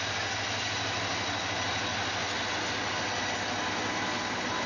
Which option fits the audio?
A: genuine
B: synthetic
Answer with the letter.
A